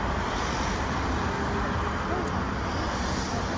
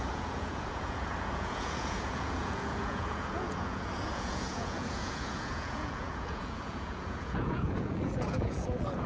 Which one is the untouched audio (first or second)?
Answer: first